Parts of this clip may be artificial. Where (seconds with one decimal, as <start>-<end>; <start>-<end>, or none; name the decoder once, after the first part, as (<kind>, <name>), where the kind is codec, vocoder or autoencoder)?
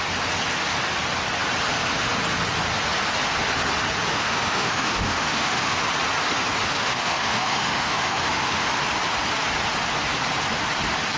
4.1-5.8 (autoencoder, DAC-VAE); 6.7-8.7